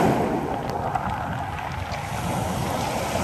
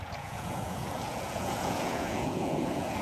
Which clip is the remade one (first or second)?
second